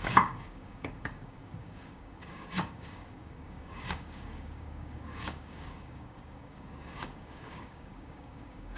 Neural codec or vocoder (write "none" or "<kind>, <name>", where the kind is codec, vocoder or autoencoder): codec, DAC